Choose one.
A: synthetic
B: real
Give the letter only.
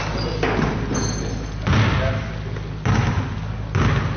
B